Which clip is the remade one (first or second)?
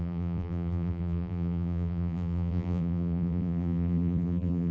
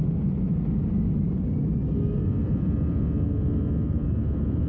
first